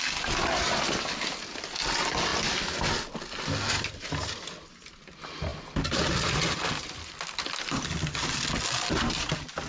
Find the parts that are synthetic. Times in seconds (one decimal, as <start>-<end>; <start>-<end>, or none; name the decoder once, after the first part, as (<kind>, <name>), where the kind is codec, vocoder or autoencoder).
none